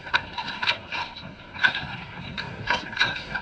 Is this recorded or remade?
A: remade